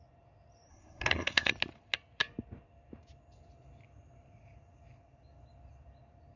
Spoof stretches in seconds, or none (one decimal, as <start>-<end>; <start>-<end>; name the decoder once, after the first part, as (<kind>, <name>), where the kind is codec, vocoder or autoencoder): 0.7-1.5 (codec, SNAC)